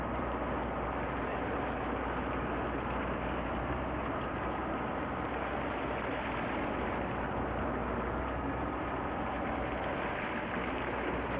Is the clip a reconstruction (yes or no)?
no